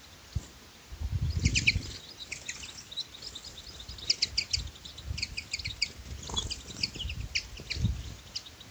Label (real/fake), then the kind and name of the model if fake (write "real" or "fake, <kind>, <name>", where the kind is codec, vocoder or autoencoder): real